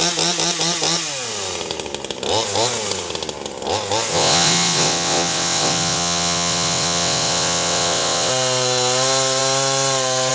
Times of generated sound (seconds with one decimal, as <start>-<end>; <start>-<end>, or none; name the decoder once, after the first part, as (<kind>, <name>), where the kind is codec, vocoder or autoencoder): 4.1-8.3 (vocoder, WaveNeXt)